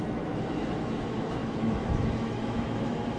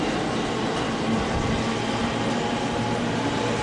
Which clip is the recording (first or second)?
second